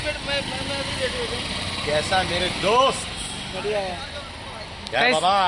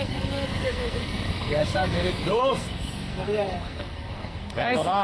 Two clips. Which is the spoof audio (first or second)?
second